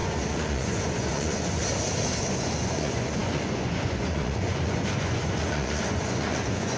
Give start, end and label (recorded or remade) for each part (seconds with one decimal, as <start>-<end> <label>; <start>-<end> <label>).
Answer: 0.0-1.6 remade; 1.6-2.2 recorded; 2.2-6.8 remade